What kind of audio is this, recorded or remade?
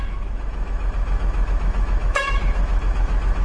remade